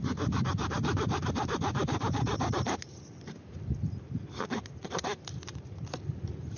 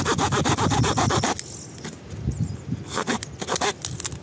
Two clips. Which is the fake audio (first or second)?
first